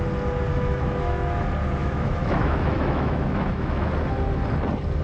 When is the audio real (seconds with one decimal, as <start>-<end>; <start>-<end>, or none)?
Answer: 0.0-0.5; 1.4-1.8; 3.9-5.0